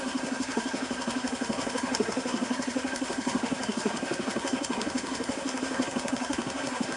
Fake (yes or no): yes